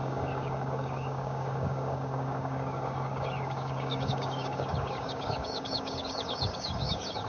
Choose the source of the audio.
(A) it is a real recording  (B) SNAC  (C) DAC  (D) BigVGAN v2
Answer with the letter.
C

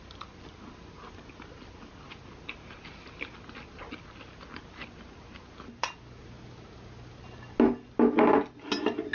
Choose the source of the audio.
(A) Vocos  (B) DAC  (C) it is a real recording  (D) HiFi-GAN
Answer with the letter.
C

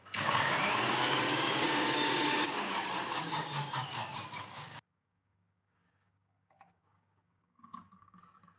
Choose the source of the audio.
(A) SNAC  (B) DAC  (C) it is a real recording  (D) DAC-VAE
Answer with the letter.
B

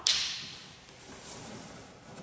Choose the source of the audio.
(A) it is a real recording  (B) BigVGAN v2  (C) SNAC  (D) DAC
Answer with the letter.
A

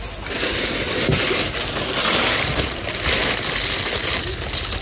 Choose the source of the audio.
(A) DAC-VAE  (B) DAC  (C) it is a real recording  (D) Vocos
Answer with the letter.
C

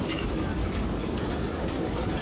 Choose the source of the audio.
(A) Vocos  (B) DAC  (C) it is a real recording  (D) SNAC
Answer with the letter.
B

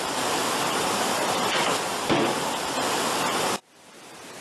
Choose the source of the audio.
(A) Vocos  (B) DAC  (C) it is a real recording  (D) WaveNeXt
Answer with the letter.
C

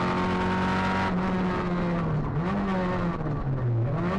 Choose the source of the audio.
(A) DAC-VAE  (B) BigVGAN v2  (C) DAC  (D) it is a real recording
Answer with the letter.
D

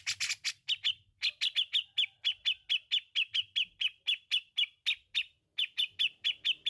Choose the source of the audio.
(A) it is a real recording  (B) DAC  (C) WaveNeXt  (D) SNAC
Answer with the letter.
A